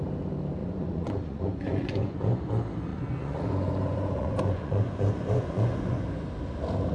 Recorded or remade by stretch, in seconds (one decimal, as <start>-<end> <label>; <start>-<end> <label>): 0.0-0.6 recorded; 0.6-2.4 remade; 2.4-2.9 recorded; 2.9-6.0 remade; 6.0-6.9 recorded